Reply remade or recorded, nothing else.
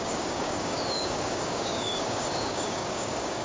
remade